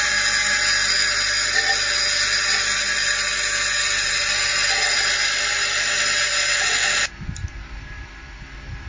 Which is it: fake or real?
real